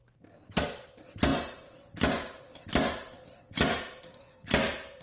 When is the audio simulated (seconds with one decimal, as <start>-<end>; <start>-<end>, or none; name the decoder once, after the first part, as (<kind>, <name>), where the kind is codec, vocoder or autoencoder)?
none